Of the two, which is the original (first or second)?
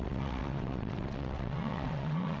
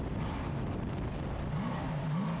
second